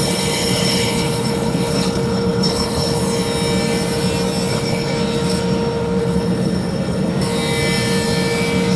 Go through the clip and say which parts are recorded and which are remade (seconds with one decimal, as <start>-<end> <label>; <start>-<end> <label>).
0.0-3.0 remade; 3.0-4.5 recorded; 4.5-4.9 remade; 4.9-6.0 recorded; 6.0-7.1 remade; 7.1-8.8 recorded